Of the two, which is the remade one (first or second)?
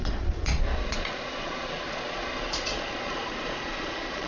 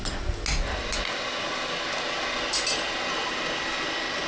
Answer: first